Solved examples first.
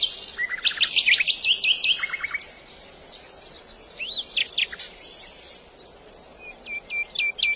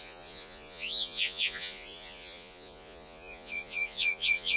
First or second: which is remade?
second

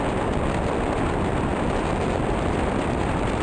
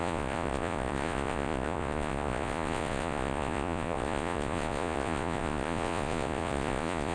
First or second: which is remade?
second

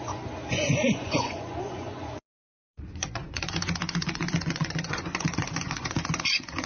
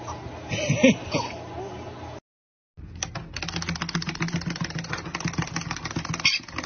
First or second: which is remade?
first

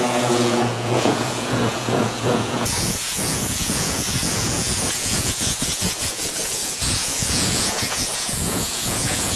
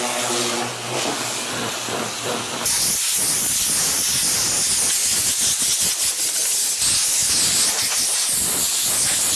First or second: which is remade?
first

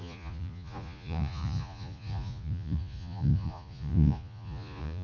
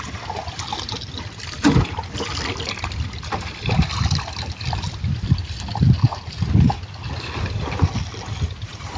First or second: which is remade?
first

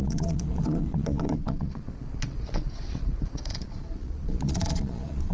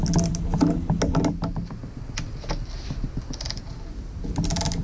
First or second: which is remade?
first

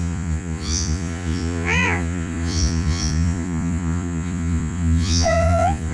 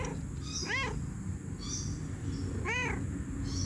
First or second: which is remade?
first